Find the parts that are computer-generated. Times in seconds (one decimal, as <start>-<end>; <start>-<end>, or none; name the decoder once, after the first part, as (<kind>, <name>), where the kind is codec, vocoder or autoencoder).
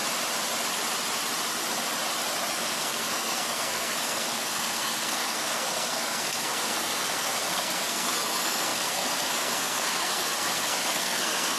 2.5-11.6 (codec, SNAC)